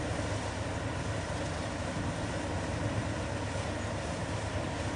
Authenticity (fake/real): real